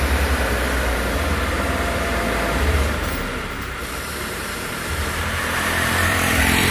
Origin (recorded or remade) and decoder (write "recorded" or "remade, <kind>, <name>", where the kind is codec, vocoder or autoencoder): remade, vocoder, BigVGAN v2